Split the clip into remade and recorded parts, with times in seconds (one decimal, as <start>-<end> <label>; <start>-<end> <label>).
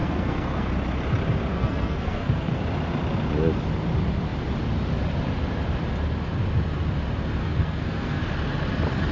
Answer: 0.0-0.7 remade; 0.7-1.5 recorded; 1.5-2.6 remade; 2.6-7.4 recorded; 7.4-8.2 remade; 8.2-9.1 recorded